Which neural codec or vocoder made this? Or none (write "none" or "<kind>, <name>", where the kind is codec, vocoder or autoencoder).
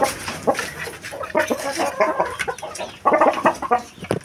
none